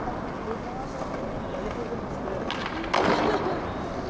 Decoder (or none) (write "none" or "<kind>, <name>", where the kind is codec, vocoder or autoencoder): none